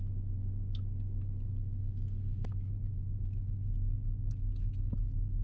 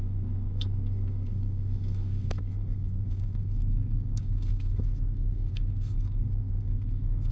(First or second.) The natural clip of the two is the first